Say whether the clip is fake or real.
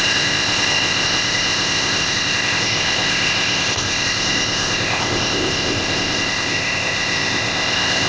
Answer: fake